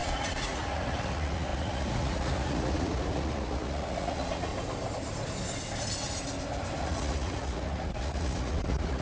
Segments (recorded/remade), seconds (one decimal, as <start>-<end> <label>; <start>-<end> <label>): 0.0-4.5 remade; 4.5-6.8 recorded; 6.8-9.0 remade